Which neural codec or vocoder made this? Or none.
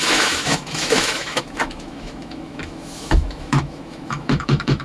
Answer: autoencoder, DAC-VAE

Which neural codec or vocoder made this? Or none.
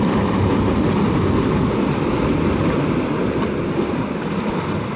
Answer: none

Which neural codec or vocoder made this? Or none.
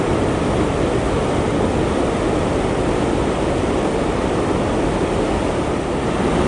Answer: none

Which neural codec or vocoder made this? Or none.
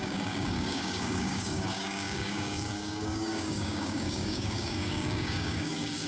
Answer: codec, DAC